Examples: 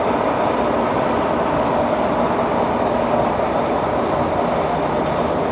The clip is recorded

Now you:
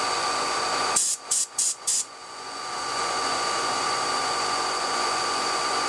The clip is remade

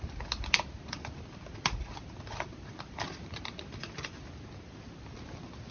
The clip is recorded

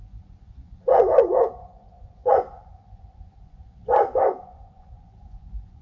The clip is remade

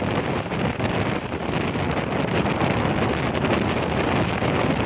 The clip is recorded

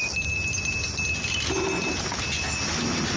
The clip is recorded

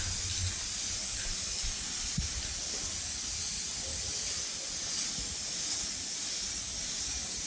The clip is recorded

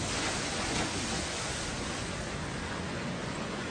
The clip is remade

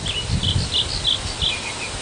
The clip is recorded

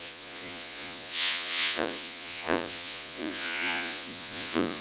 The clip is remade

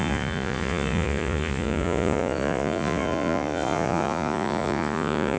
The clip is remade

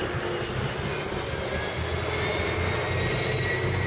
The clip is recorded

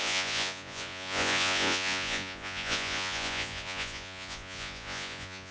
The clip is remade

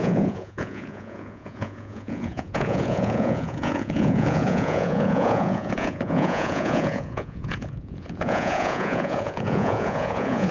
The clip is remade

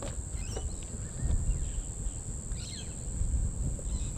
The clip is recorded